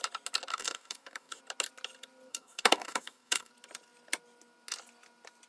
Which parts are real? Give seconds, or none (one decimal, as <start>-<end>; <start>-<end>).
0.0-0.5; 1.4-2.3; 3.5-5.5